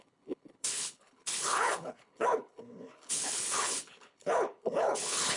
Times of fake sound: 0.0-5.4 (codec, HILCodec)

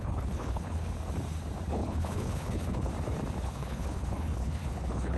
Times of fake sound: 0.0-0.9 (codec, HILCodec); 1.7-2.9; 3.4-5.2

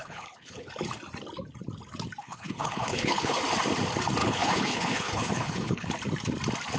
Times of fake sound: 0.0-0.7 (codec, HILCodec); 2.2-3.4; 4.2-5.9

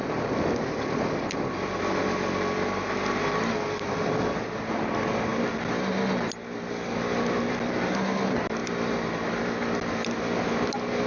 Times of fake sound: none

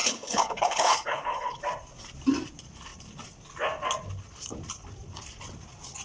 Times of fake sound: 0.0-1.6 (codec, HILCodec)

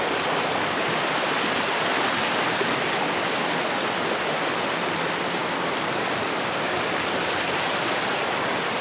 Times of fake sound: none

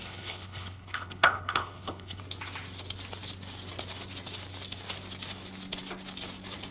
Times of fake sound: 0.0-2.2 (codec, HILCodec)